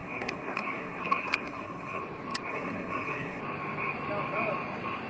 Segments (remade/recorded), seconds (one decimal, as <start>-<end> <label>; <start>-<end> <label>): 0.0-2.0 remade; 2.0-2.5 recorded; 2.5-3.4 remade; 3.4-5.1 recorded